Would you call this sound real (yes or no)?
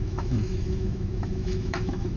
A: no